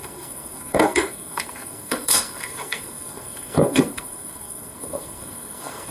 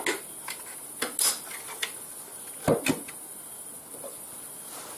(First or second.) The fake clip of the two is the first